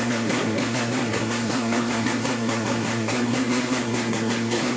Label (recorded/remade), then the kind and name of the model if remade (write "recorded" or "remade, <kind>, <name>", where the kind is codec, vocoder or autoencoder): remade, codec, SNAC